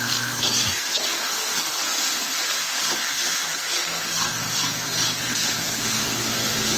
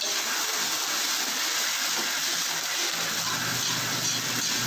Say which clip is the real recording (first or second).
second